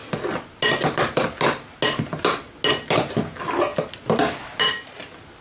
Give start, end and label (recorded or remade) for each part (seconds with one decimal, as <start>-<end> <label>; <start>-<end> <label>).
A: 0.0-5.4 recorded